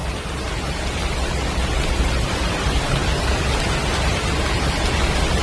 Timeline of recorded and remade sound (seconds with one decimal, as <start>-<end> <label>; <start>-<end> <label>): 0.0-5.4 recorded